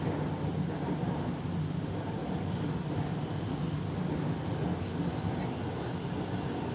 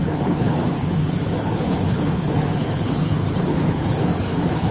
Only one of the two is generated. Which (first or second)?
second